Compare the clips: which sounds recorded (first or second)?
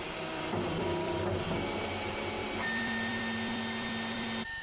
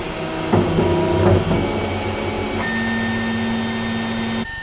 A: second